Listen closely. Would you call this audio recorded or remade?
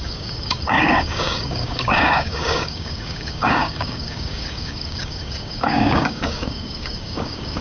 remade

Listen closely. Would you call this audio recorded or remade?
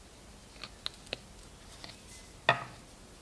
recorded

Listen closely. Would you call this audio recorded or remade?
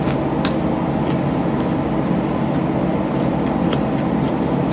recorded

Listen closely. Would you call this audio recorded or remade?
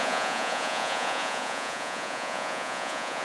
remade